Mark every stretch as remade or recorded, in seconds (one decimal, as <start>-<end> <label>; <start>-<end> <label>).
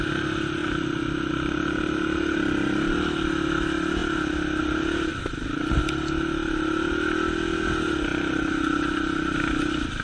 0.0-10.0 recorded